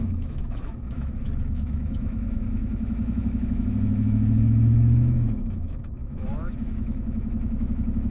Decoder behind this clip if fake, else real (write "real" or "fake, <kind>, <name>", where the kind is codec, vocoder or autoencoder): fake, autoencoder, DAC-VAE